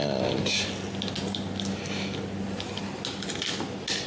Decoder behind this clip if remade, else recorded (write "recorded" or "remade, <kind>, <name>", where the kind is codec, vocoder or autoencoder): recorded